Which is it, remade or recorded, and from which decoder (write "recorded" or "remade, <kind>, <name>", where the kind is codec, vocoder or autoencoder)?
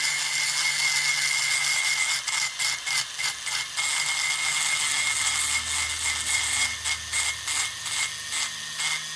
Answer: recorded